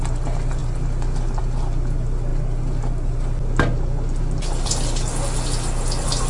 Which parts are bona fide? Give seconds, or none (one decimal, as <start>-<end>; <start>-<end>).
0.0-6.3